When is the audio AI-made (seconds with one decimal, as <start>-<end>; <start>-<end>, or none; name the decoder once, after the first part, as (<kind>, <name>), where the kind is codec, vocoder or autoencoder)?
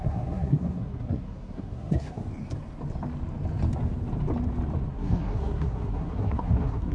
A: 0.0-2.2 (codec, SNAC); 4.9-6.9